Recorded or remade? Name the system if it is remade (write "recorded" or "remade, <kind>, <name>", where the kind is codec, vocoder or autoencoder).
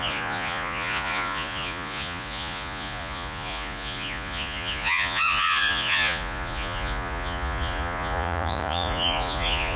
remade, vocoder, Vocos